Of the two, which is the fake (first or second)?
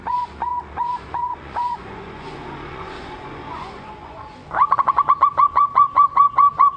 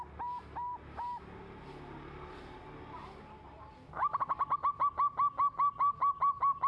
first